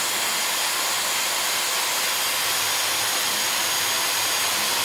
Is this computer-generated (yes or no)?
no